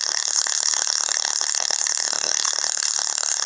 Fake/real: fake